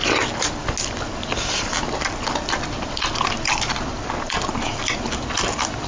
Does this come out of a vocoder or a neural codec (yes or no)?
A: no